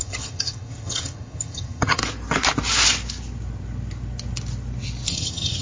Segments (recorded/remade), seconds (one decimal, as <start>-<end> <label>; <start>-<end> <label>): 0.0-2.0 remade; 2.0-5.1 recorded; 5.1-5.6 remade